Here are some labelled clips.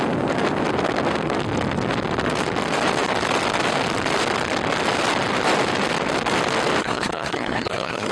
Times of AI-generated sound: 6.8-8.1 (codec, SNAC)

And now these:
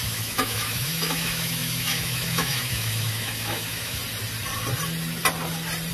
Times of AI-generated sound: 0.0-4.0 (autoencoder, DAC-VAE)

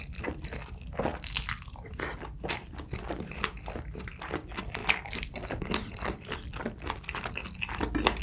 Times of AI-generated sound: 4.8-7.3 (vocoder, BigVGAN v2)

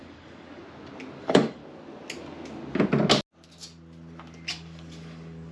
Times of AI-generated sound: 0.0-0.6 (codec, DAC); 1.2-1.6; 4.5-5.5

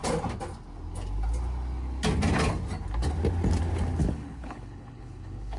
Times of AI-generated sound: 4.0-5.6 (codec, HILCodec)